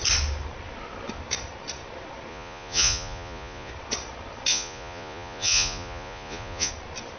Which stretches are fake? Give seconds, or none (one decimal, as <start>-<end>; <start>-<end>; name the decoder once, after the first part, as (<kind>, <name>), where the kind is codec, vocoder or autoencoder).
2.3-3.7 (vocoder, Vocos); 4.5-6.7